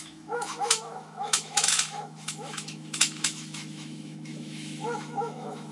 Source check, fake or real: fake